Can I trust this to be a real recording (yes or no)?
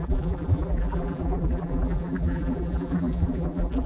no